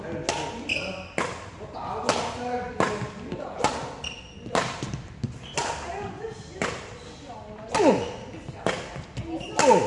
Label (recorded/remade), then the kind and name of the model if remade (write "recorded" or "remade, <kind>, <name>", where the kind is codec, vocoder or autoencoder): recorded